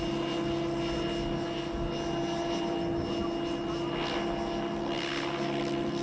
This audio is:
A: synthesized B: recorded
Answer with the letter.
B